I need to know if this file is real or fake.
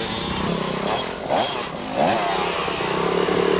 real